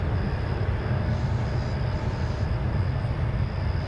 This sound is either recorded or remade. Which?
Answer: recorded